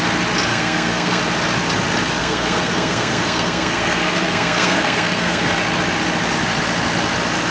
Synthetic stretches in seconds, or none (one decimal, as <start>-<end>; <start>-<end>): 0.5-1.2; 2.2-5.5